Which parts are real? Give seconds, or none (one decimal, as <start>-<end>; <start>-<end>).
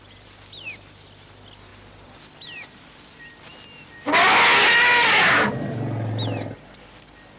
0.0-7.4